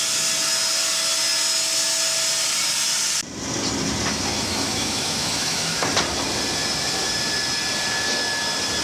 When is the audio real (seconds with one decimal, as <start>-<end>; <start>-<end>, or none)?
0.0-4.5; 5.9-8.8